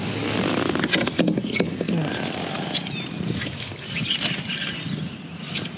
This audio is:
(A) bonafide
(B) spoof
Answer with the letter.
A